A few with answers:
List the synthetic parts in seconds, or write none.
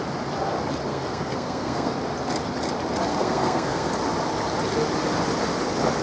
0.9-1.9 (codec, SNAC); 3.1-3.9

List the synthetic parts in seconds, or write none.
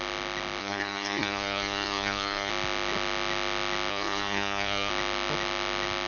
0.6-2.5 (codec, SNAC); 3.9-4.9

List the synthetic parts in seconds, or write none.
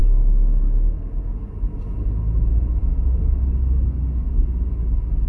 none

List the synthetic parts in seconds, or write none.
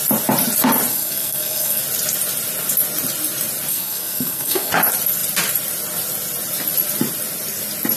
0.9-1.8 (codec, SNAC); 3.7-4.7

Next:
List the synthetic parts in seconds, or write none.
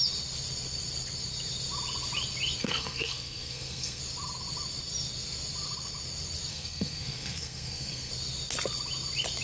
2.6-4.0 (codec, SNAC); 6.5-8.1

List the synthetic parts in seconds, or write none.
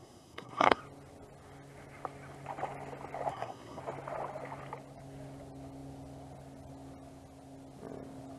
0.0-0.8 (codec, SNAC); 3.3-3.8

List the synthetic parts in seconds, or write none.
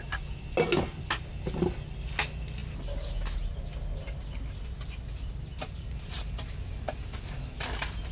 none